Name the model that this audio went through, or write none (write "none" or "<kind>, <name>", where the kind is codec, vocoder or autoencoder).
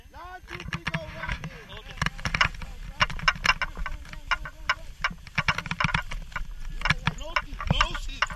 none